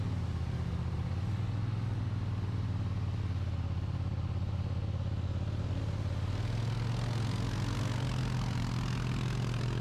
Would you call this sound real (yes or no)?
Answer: yes